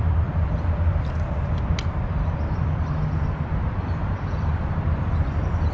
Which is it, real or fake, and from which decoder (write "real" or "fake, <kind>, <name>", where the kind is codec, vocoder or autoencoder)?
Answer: fake, vocoder, BigVGAN v2